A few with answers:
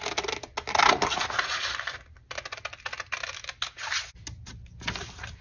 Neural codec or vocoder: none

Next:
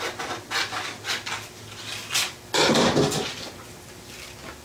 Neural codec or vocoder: none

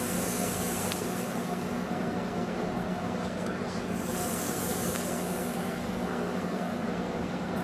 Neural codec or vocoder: codec, SNAC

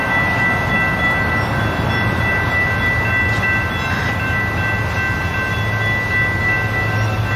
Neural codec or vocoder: none